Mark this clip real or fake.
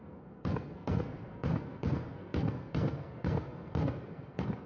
fake